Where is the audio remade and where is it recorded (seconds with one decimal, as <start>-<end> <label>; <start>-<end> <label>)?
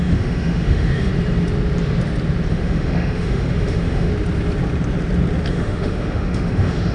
0.0-1.1 remade; 1.1-2.5 recorded; 2.5-4.1 remade; 4.1-5.5 recorded; 5.5-6.9 remade